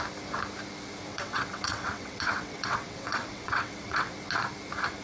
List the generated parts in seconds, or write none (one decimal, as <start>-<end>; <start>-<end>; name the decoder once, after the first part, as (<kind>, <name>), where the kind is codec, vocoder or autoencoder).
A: 1.1-4.1 (vocoder, WaveNeXt)